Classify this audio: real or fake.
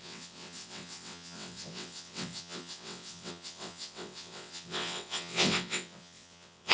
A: fake